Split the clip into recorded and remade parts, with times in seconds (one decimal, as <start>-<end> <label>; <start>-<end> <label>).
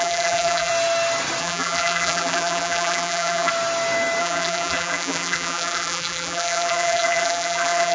0.0-0.7 remade; 0.7-1.4 recorded; 1.4-3.5 remade; 3.5-4.2 recorded; 4.2-7.9 remade